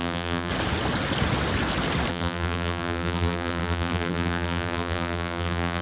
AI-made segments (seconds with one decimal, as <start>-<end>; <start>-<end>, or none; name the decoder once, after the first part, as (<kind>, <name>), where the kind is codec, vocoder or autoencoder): 0.0-0.5 (vocoder, BigVGAN v2); 2.1-5.8